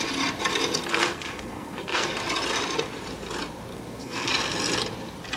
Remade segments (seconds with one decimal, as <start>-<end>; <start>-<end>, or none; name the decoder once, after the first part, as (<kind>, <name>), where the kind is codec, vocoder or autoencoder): 0.9-2.1 (codec, SNAC); 3.7-4.3